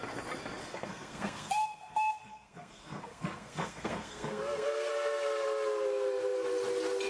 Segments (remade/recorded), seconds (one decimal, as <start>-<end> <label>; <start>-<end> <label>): 0.0-0.6 recorded; 0.6-4.9 remade; 4.9-7.1 recorded